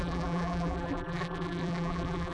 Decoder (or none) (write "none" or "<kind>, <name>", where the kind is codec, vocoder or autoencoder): vocoder, BigVGAN v2